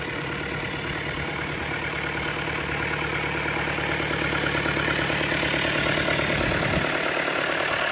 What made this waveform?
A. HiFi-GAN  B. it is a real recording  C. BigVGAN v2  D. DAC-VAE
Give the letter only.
B